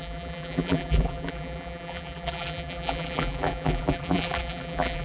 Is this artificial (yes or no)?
yes